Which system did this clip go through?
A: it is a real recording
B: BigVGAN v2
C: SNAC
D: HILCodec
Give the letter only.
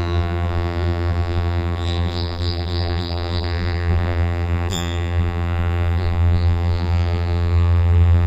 B